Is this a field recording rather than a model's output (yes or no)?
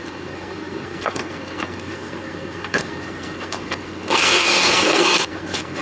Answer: no